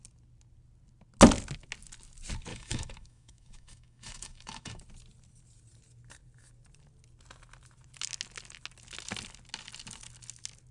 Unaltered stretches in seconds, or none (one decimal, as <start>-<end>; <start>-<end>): 0.0-2.5; 4.8-10.7